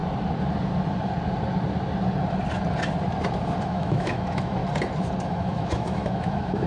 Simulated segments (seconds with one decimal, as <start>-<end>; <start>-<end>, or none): 3.6-4.6; 5.2-6.7